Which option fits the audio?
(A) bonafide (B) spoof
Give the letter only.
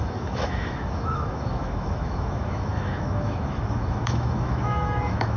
B